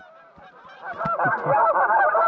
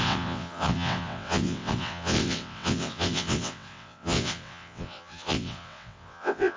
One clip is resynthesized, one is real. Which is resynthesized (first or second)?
second